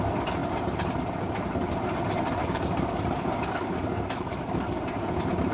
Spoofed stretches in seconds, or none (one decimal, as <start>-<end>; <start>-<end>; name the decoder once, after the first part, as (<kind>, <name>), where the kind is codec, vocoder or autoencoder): 2.4-4.8 (codec, DAC)